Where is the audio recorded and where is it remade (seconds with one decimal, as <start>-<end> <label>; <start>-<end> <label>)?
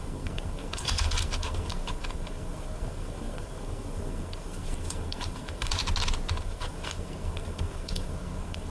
0.0-5.7 remade; 5.7-6.3 recorded; 6.3-8.7 remade